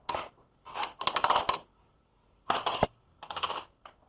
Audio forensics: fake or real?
real